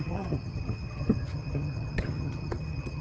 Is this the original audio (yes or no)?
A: no